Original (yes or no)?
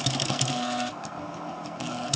no